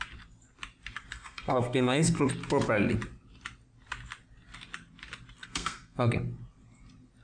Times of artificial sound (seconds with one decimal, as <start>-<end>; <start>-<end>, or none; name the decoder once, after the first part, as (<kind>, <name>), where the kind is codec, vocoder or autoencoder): 1.1-2.3 (codec, SNAC); 5.4-6.1